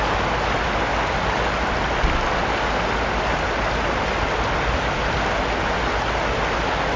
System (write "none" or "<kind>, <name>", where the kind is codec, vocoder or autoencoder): none